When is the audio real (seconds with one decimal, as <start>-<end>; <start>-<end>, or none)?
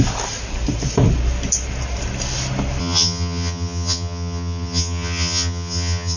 0.0-2.8